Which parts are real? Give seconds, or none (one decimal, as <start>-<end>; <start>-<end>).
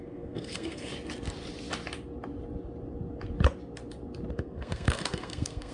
0.9-4.3